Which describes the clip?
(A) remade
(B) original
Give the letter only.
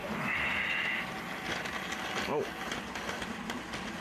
B